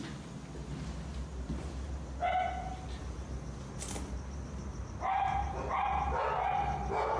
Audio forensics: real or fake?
real